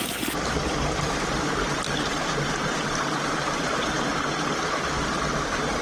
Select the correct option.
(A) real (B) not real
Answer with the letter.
A